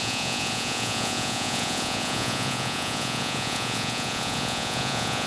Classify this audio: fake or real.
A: fake